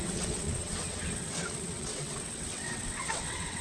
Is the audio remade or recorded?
remade